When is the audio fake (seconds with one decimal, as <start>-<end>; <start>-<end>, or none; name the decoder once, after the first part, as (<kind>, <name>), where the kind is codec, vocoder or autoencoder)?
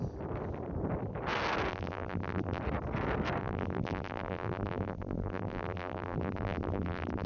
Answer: 1.7-2.6 (vocoder, BigVGAN v2); 3.4-7.3